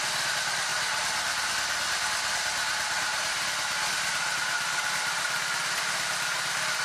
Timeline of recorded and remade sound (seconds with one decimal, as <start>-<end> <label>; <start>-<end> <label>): 0.0-6.8 recorded